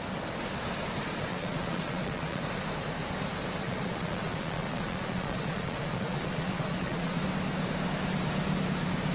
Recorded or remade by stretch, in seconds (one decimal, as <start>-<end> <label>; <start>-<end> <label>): 0.0-1.3 recorded; 1.3-2.4 remade; 2.4-3.6 recorded; 3.6-7.2 remade; 7.2-9.1 recorded